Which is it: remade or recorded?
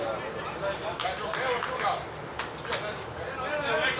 recorded